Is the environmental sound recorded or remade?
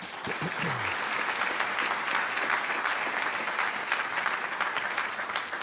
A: recorded